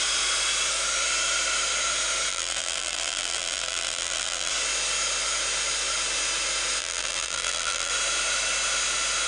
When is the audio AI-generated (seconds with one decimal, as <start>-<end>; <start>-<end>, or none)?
2.3-4.5; 6.8-7.9